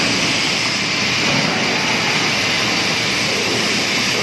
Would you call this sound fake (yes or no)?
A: no